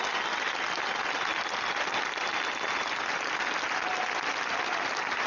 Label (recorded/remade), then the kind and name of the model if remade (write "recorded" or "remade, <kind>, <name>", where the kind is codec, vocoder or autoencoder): recorded